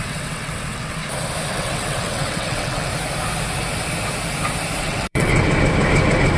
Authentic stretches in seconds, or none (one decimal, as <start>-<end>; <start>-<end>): 1.0-1.5; 2.9-4.8; 5.3-6.4